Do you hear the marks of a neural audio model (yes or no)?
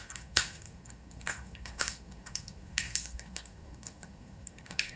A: yes